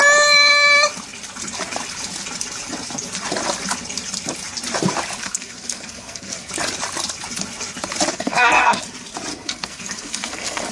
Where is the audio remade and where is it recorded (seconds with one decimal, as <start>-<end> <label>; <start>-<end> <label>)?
0.0-5.2 recorded; 5.2-6.5 remade; 6.5-8.1 recorded; 8.1-8.8 remade; 8.8-9.3 recorded; 9.3-10.7 remade